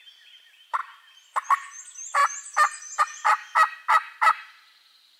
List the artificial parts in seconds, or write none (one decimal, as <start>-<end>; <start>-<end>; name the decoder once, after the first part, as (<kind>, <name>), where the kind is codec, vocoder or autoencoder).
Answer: none